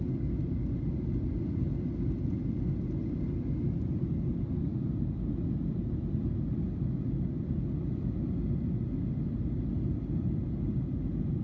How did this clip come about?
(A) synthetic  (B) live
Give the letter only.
B